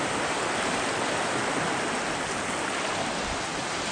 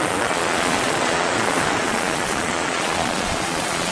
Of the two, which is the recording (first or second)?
first